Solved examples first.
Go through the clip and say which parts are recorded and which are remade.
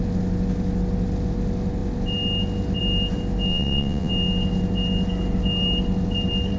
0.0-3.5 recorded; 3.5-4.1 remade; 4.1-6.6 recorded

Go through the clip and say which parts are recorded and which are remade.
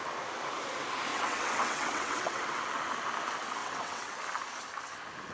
0.0-1.1 recorded; 1.1-2.6 remade; 2.6-3.6 recorded; 3.6-4.2 remade; 4.2-5.3 recorded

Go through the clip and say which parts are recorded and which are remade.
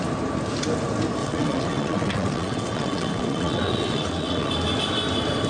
0.0-1.2 recorded; 1.2-4.5 remade; 4.5-5.5 recorded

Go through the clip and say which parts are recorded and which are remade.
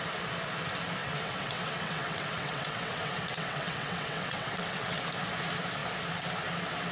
0.0-1.0 recorded; 1.0-5.0 remade; 5.0-6.9 recorded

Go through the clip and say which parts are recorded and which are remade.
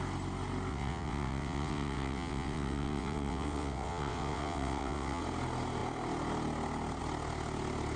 0.0-0.7 recorded; 0.7-5.2 remade; 5.2-8.0 recorded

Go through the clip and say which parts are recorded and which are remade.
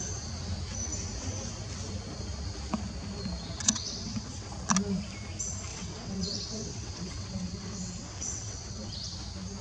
0.0-3.6 recorded; 3.6-4.5 remade; 4.5-5.7 recorded; 5.7-8.9 remade; 8.9-9.6 recorded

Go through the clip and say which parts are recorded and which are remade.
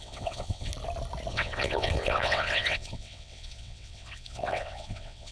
0.0-0.7 remade; 0.7-1.3 recorded; 1.3-5.3 remade